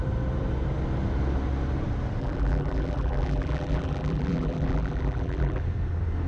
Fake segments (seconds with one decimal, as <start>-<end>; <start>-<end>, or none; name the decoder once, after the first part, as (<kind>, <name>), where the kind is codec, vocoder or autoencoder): 2.2-5.6 (vocoder, BigVGAN v2)